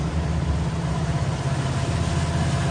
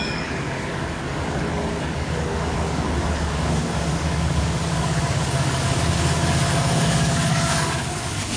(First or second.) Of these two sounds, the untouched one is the first